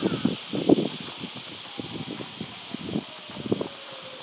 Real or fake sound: real